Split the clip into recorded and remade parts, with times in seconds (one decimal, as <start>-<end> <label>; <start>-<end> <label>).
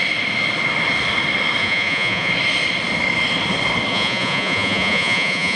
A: 0.0-1.6 recorded; 1.6-2.3 remade; 2.3-3.9 recorded; 3.9-5.6 remade